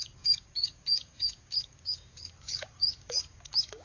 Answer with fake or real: fake